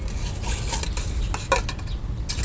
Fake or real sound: real